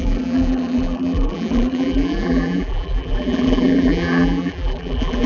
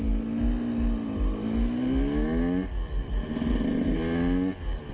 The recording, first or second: second